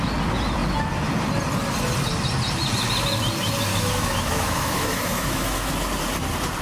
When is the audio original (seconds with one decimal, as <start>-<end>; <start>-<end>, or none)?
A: 0.0-3.7; 5.7-6.6